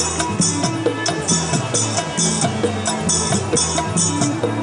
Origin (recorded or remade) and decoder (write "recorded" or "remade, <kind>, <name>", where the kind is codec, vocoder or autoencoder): recorded